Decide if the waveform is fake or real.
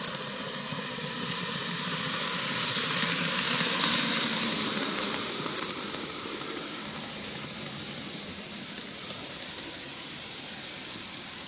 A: fake